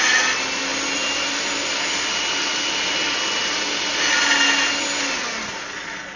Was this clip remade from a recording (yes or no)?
no